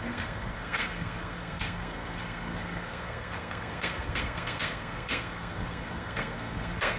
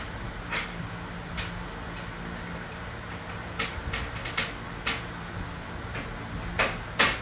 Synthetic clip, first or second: first